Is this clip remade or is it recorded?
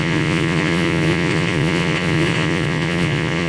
remade